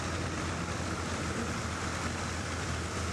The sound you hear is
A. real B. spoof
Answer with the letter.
A